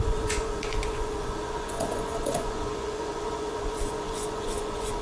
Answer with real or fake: fake